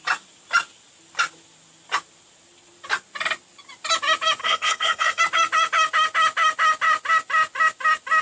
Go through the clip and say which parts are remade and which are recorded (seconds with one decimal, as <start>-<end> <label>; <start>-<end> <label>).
0.0-4.4 recorded; 4.4-5.2 remade; 5.2-8.2 recorded